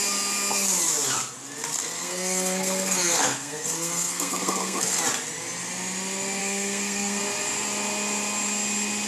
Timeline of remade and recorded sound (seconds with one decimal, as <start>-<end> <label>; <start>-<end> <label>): 0.0-1.8 recorded; 1.8-5.0 remade; 5.0-6.4 recorded; 6.4-7.2 remade; 7.2-9.1 recorded